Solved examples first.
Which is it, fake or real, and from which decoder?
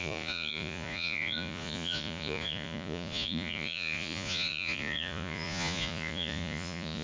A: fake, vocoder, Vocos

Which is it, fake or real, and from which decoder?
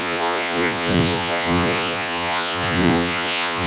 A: fake, vocoder, Vocos